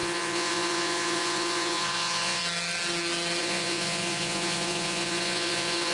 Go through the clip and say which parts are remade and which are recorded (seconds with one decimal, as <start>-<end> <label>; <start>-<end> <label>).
0.0-2.4 remade; 2.4-3.4 recorded; 3.4-5.9 remade